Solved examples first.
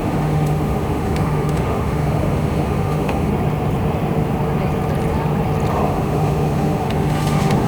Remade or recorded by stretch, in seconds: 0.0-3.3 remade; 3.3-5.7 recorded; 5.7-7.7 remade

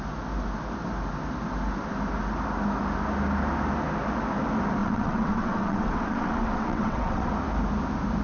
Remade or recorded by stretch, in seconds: 0.0-4.8 recorded; 4.8-7.3 remade; 7.3-8.2 recorded

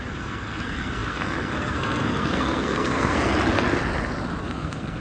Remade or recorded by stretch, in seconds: 0.0-3.3 remade; 3.3-4.4 recorded; 4.4-5.0 remade

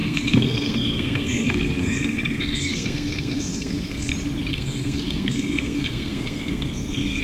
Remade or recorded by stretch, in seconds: 0.0-4.1 remade; 4.1-4.5 recorded; 4.5-7.2 remade

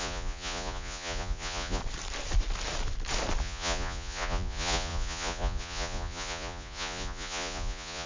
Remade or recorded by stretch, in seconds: 0.0-1.8 remade; 1.8-3.4 recorded; 3.4-8.1 remade

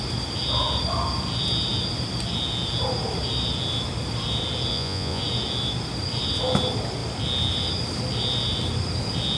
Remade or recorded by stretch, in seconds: 0.0-4.7 recorded; 4.7-5.2 remade; 5.2-9.4 recorded

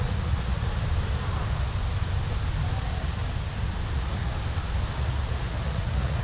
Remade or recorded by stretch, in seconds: 0.0-0.7 remade; 0.7-2.8 recorded; 2.8-3.2 remade; 3.2-3.9 recorded; 3.9-4.3 remade; 4.3-5.0 recorded; 5.0-6.2 remade

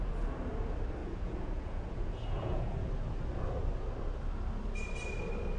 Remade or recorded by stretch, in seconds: 0.0-1.0 recorded; 1.0-2.9 remade; 2.9-5.6 recorded